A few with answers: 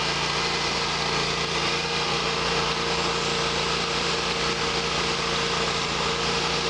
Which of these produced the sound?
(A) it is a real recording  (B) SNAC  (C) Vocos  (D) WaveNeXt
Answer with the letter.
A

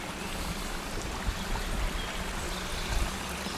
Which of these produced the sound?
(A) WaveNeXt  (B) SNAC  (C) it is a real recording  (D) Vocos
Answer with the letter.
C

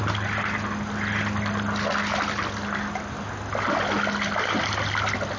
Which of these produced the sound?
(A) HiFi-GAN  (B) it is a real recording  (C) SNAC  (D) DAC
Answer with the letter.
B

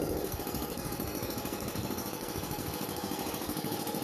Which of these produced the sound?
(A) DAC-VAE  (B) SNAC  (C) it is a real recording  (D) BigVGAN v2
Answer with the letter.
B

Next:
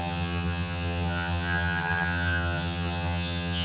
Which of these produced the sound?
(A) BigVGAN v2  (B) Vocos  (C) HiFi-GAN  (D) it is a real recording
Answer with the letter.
C